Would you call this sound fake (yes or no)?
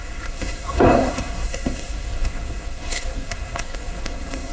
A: yes